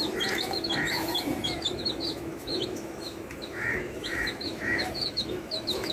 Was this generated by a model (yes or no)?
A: yes